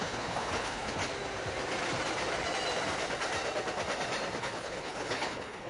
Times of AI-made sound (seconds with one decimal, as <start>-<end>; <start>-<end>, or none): 0.0-1.0; 4.4-5.7